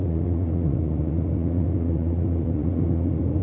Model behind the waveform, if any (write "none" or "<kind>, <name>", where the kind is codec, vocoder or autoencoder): vocoder, Vocos